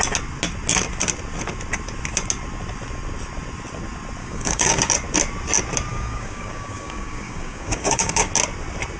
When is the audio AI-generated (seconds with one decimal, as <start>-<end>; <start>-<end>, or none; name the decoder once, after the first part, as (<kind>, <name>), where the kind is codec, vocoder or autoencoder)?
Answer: 4.2-4.9 (codec, DAC); 5.9-8.3